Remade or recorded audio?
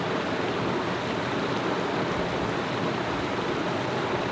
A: recorded